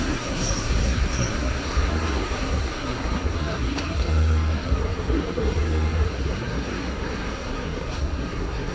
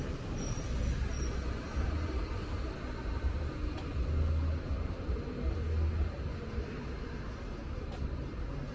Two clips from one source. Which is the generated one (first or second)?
first